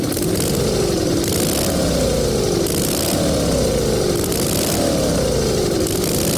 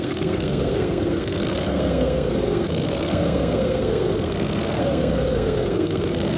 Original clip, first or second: first